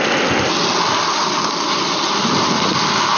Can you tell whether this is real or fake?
real